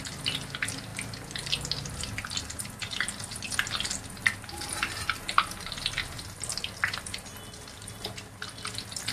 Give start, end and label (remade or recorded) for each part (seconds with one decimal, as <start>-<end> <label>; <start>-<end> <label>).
0.0-9.1 recorded